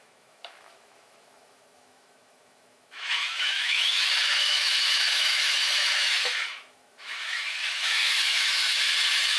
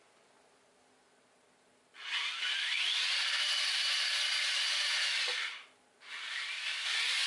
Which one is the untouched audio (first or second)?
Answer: second